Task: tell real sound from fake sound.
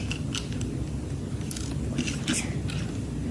real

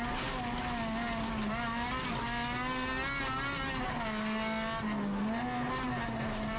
real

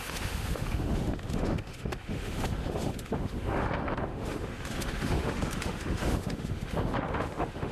fake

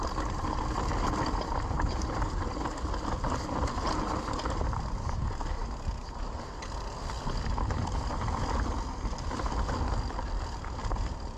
real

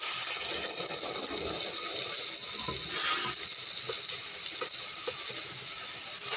real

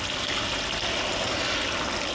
real